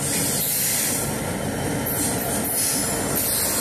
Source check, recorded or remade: recorded